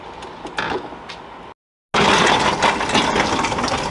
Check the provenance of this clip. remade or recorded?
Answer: recorded